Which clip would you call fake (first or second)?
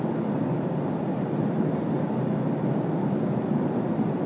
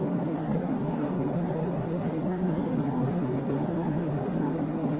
second